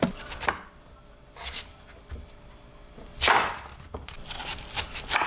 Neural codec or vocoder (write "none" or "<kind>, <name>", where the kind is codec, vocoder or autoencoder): none